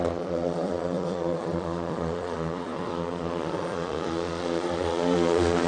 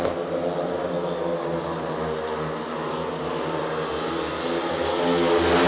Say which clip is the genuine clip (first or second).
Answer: second